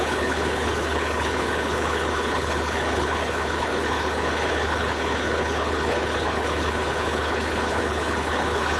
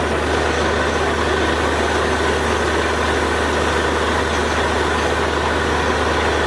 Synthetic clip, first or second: first